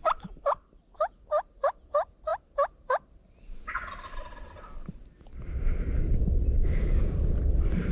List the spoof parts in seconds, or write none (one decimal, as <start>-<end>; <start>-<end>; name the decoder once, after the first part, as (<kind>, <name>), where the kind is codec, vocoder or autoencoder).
none